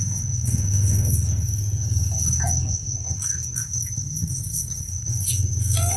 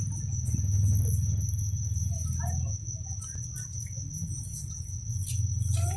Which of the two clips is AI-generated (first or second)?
first